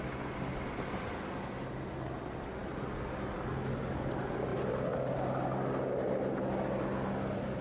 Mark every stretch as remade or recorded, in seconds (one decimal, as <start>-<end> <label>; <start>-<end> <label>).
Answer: 0.0-7.6 recorded

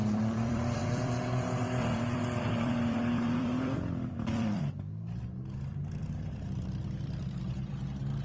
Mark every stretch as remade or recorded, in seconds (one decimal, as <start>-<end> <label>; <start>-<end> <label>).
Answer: 0.0-4.6 remade; 4.6-6.0 recorded; 6.0-7.3 remade; 7.3-8.2 recorded

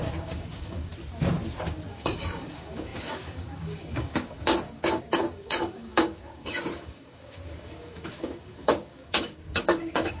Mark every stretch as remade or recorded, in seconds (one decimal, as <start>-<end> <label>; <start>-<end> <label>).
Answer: 0.0-0.9 remade; 0.9-1.9 recorded; 1.9-10.2 remade

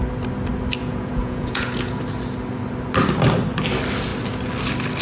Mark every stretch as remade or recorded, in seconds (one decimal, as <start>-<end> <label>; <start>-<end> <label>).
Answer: 0.0-0.8 recorded; 0.8-2.0 remade; 2.0-5.0 recorded

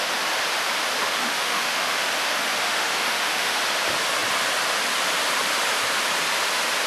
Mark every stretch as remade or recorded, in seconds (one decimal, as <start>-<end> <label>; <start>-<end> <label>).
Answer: 0.0-1.0 recorded; 1.0-2.1 remade; 2.1-2.6 recorded; 2.6-3.6 remade; 3.6-6.9 recorded

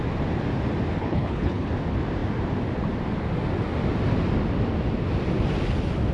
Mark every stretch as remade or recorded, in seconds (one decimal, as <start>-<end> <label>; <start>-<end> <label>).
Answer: 0.0-1.0 recorded; 1.0-1.7 remade; 1.7-6.1 recorded

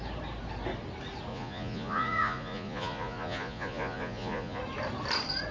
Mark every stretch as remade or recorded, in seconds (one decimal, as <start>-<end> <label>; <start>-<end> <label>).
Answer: 0.0-1.3 recorded; 1.3-4.6 remade; 4.6-5.5 recorded